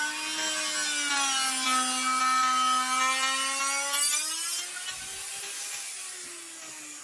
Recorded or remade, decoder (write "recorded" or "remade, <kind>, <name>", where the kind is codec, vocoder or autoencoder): recorded